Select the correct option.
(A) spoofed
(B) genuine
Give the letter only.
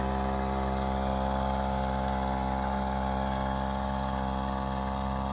B